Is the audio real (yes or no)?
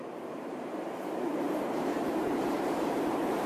no